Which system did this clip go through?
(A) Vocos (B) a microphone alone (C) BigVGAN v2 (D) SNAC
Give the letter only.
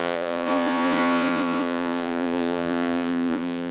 A